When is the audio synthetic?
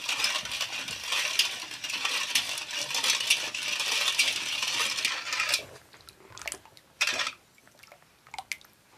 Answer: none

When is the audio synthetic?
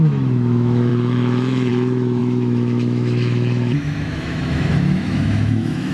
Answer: 0.0-5.9 (autoencoder, DAC-VAE)